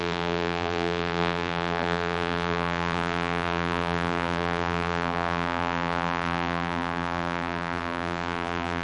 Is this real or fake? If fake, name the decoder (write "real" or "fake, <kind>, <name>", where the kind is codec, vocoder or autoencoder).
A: fake, vocoder, BigVGAN v2